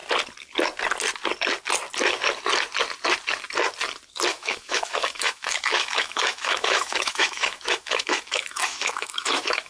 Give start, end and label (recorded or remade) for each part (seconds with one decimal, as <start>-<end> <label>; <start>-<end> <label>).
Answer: 0.0-4.3 recorded; 4.3-9.7 remade